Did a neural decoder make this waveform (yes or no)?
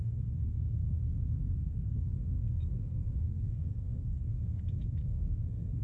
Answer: yes